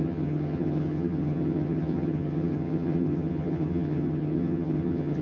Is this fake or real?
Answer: fake